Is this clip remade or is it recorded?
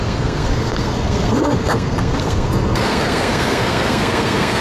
remade